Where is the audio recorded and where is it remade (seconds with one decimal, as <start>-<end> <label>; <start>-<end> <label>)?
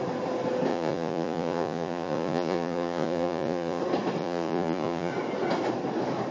0.0-0.7 recorded; 0.7-3.8 remade; 3.8-4.2 recorded; 4.2-5.1 remade; 5.1-6.3 recorded